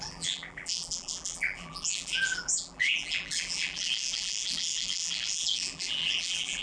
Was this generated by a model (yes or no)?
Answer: yes